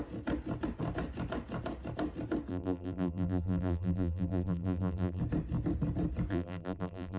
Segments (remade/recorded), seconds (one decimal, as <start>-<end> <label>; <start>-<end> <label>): 0.0-2.5 recorded; 2.5-5.2 remade; 5.2-6.3 recorded; 6.3-7.2 remade

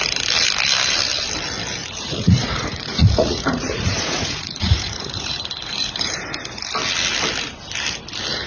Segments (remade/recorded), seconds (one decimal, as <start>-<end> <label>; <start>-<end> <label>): 0.0-1.8 recorded; 1.8-5.3 remade; 5.3-8.5 recorded

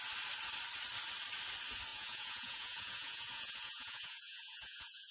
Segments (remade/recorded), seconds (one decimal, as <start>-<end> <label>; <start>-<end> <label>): 0.0-1.9 recorded; 1.9-5.1 remade

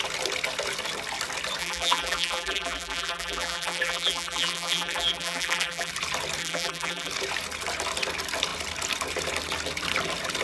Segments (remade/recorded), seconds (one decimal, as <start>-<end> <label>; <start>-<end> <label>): 0.0-1.6 recorded; 1.6-5.9 remade; 5.9-6.4 recorded; 6.4-7.1 remade; 7.1-10.4 recorded

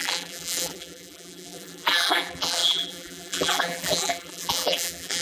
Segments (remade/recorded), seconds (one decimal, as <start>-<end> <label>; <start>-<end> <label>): 0.0-5.2 remade

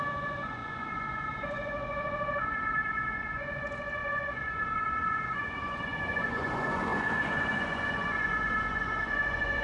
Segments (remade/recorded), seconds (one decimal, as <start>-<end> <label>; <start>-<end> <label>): 0.0-9.6 remade

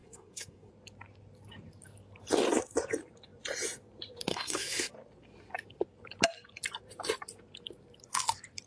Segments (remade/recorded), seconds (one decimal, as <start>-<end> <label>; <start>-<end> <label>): 0.0-0.7 remade; 0.7-4.3 recorded; 4.3-4.9 remade; 4.9-8.7 recorded